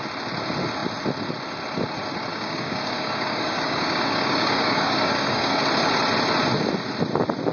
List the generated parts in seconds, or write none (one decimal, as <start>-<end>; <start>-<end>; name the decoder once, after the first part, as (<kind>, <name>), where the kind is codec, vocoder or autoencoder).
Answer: 2.3-5.6 (codec, DAC)